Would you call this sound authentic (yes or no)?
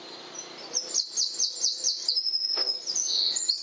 yes